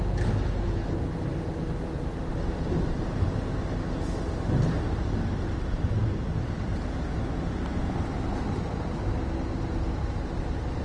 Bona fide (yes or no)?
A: yes